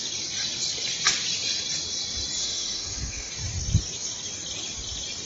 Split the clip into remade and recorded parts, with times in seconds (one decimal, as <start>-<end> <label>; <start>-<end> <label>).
0.0-2.4 recorded; 2.4-3.3 remade; 3.3-5.3 recorded